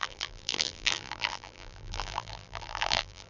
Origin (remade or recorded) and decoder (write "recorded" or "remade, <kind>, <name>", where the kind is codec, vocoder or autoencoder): remade, vocoder, BigVGAN v2